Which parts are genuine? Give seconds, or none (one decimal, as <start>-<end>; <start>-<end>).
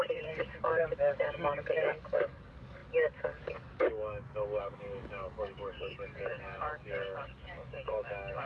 none